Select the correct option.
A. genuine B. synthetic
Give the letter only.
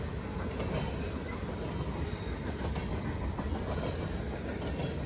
A